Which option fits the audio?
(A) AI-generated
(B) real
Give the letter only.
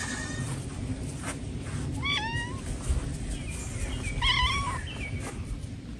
B